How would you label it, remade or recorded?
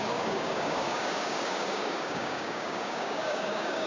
remade